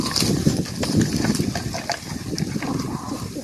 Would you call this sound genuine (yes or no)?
yes